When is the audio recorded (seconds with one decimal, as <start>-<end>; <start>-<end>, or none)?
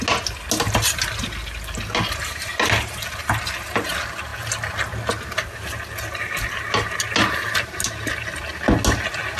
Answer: 0.0-9.4